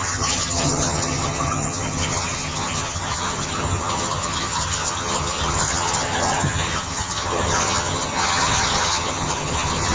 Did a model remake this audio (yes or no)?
yes